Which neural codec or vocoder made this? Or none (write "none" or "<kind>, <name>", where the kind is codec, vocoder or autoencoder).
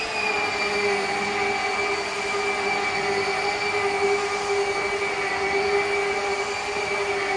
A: none